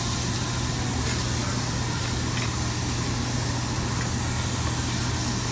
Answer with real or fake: real